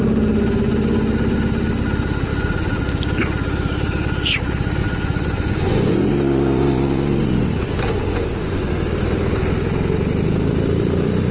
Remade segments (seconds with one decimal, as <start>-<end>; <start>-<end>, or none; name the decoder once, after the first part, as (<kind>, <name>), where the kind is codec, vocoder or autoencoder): 2.3-2.8 (vocoder, Vocos); 4.8-8.7